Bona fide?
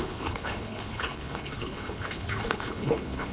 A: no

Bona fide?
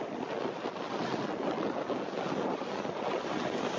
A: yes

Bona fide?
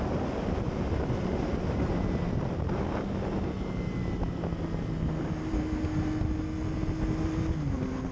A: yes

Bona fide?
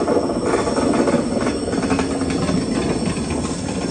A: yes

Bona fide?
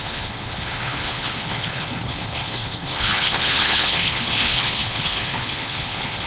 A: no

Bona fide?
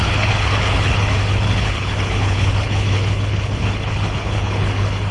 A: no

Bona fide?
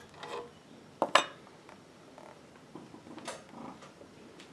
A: yes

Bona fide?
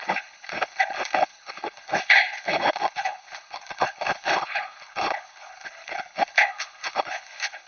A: no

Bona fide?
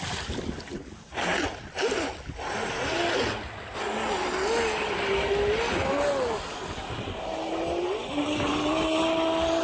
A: yes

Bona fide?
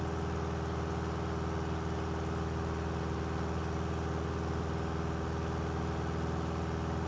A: yes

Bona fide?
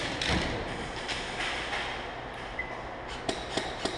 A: yes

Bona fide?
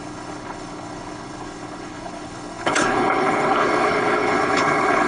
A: no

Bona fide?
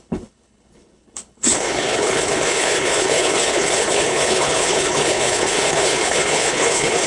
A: no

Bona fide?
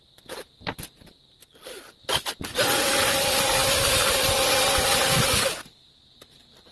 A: yes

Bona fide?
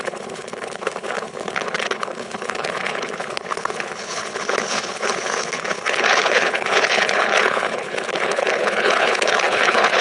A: no